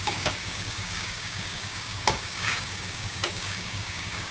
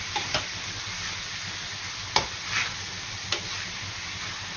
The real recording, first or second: second